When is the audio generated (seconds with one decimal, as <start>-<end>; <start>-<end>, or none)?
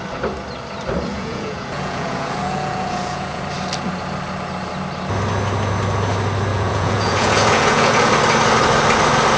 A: 1.1-3.4; 6.5-8.1